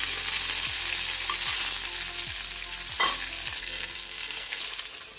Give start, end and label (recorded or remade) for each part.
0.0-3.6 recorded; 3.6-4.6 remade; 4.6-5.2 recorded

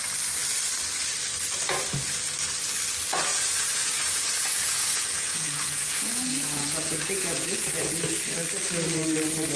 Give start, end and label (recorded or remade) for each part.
0.0-3.3 recorded; 3.3-8.0 remade; 8.0-9.6 recorded

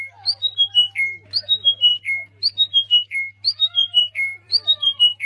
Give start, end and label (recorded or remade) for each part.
0.0-3.8 recorded; 3.8-5.3 remade

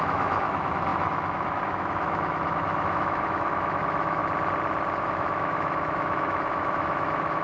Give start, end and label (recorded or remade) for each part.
0.0-4.2 remade; 4.2-5.0 recorded; 5.0-7.4 remade

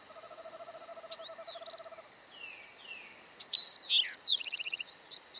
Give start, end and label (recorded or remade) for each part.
0.0-0.9 remade; 0.9-4.1 recorded; 4.1-5.4 remade

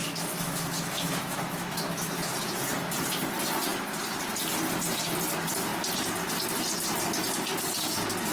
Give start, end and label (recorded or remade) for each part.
0.0-2.3 remade; 2.3-8.3 recorded

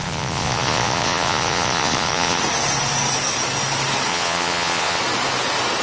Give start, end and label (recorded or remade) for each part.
0.0-2.4 remade; 2.4-4.1 recorded; 4.1-5.0 remade; 5.0-5.8 recorded

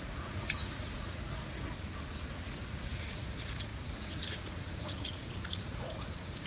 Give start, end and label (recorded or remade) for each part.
0.0-1.3 remade; 1.3-2.0 recorded; 2.0-6.5 remade